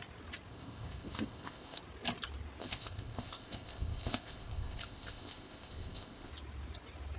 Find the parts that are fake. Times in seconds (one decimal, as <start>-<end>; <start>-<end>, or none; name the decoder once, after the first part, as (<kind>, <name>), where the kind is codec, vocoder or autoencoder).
0.5-1.8 (codec, ZipCodec); 2.6-6.3